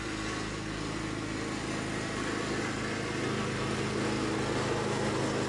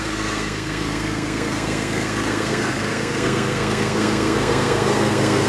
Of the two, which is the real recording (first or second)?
first